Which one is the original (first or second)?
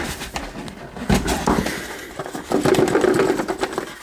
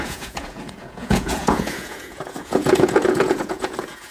first